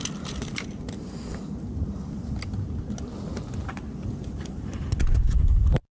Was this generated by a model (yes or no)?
no